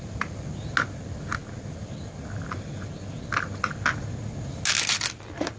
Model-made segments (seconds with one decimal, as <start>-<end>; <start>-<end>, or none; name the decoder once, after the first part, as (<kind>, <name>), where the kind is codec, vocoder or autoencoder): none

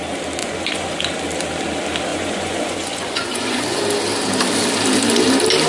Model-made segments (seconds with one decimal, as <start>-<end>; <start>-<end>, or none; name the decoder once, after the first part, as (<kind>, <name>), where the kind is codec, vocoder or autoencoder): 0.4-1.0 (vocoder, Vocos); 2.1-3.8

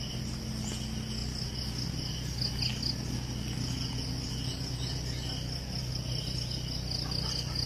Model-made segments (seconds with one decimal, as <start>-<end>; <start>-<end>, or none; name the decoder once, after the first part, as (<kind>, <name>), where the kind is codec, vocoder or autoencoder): none

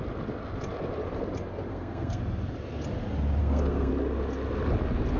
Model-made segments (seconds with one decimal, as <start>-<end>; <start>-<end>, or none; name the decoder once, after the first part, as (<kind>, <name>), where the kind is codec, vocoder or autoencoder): 1.7-2.2 (codec, SNAC); 3.4-3.9

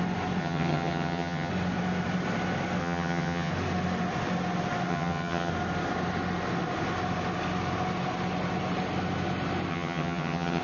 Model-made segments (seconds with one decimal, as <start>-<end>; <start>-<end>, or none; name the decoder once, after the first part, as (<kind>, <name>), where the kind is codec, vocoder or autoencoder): 0.4-1.5 (vocoder, HiFi-GAN); 2.8-3.5; 4.9-5.5; 9.7-10.6

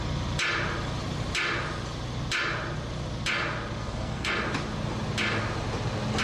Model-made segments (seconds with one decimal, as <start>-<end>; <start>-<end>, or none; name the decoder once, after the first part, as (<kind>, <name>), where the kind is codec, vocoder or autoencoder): 3.8-4.3 (codec, SNAC)